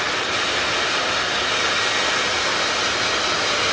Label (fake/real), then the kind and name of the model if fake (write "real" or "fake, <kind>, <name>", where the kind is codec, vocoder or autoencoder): real